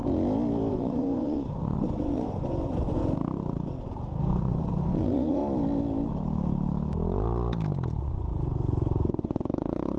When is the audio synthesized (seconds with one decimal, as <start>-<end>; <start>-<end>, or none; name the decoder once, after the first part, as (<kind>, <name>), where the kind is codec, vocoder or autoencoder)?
0.7-3.0 (vocoder, Vocos); 4.2-5.4; 8.0-10.0